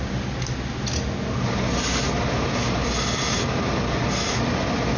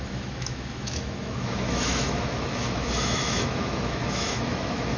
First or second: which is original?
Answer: first